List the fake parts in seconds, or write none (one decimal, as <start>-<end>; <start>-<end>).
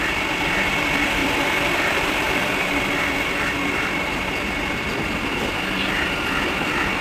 1.2-5.4